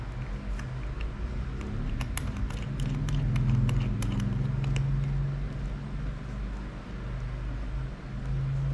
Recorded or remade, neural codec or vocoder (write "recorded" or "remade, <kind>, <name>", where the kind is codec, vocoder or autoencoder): recorded